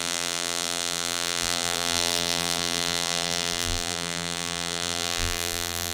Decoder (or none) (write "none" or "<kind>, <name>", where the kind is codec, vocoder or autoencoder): vocoder, BigVGAN v2